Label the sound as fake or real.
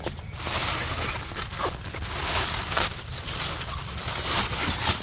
real